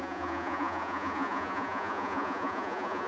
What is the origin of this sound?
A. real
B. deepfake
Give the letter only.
B